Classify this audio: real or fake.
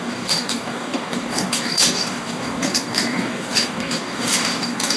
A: fake